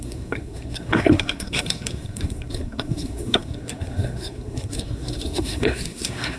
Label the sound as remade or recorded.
remade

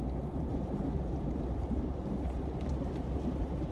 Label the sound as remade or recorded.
remade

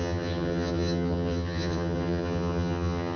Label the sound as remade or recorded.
remade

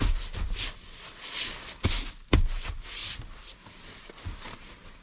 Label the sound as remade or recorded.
recorded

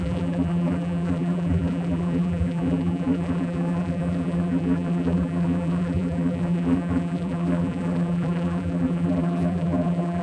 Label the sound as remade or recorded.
remade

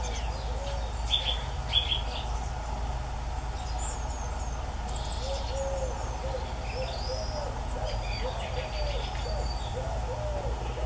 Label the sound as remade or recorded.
recorded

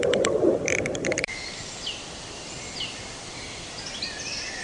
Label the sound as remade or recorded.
remade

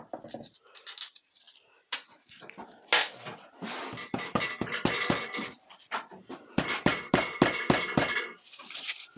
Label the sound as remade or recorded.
recorded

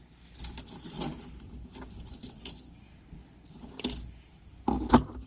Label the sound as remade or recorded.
recorded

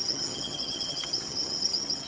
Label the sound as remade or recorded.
remade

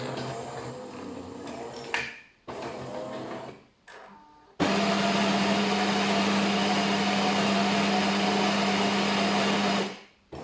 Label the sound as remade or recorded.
remade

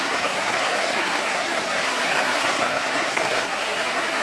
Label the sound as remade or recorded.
remade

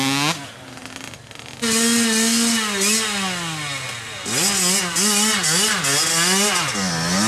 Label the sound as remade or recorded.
recorded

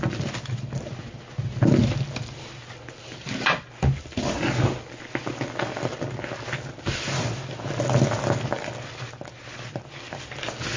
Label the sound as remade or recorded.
recorded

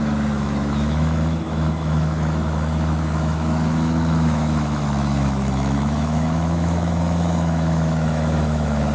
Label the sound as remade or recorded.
remade